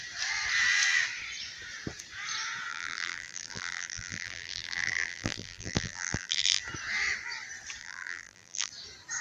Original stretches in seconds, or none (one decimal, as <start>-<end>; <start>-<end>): 0.0-2.7; 6.6-7.8; 8.7-9.2